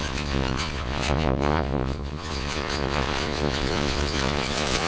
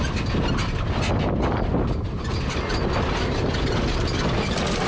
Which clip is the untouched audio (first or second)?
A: second